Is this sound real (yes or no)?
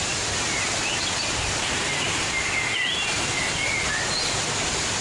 yes